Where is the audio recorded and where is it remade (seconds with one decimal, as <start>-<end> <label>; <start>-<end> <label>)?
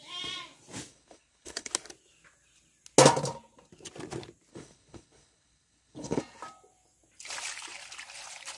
0.0-0.9 recorded; 0.9-1.7 remade; 1.7-4.5 recorded; 4.5-6.2 remade; 6.2-8.6 recorded